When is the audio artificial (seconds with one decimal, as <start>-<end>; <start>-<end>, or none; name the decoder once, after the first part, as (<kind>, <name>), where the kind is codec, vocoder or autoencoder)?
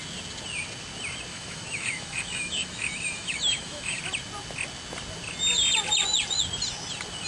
1.3-4.0 (autoencoder, DAC-VAE)